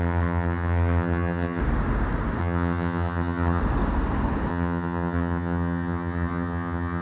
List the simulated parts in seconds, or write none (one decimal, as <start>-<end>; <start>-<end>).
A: 0.0-1.6; 2.4-3.6; 4.5-7.0